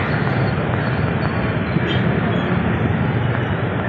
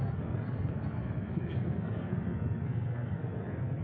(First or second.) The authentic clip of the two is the first